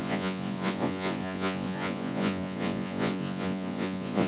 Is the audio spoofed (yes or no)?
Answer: yes